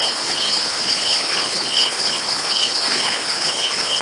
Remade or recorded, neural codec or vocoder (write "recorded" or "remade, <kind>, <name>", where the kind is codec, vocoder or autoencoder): remade, codec, HILCodec